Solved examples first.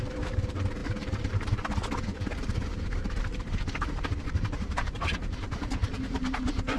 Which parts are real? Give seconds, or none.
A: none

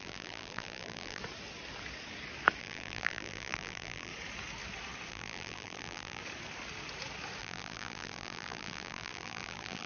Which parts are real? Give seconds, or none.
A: 1.2-2.6; 4.1-5.1; 6.2-7.4

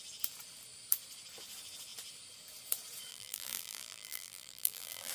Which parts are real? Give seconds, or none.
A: 0.0-3.1

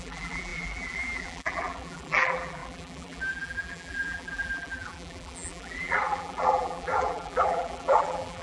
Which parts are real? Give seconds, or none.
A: none

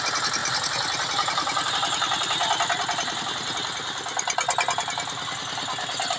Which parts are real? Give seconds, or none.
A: 0.0-0.4; 1.7-6.2

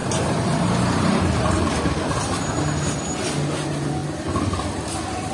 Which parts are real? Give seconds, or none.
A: 1.8-5.3

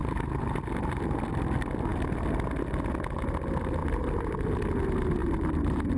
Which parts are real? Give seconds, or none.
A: 1.2-3.8; 4.5-5.2

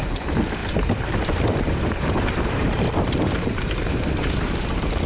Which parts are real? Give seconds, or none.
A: 0.0-0.6; 3.7-5.1